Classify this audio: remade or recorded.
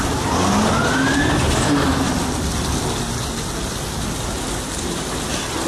recorded